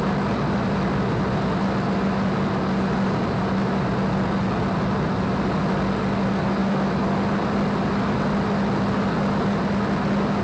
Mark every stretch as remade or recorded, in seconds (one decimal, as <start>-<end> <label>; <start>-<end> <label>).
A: 0.0-10.4 recorded